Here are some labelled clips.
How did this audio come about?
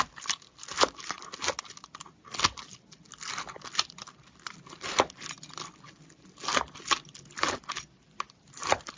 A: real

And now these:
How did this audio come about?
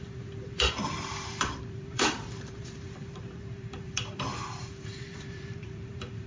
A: fake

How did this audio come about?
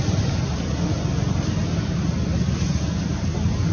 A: real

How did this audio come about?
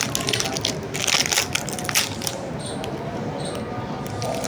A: real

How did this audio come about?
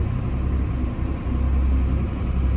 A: real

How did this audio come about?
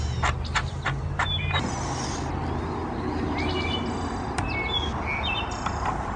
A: real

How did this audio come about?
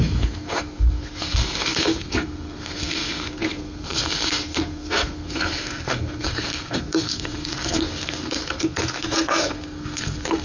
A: fake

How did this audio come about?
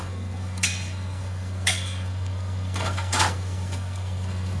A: fake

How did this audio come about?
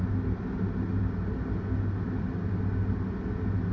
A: real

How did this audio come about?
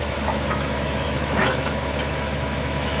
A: fake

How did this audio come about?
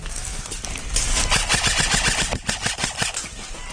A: real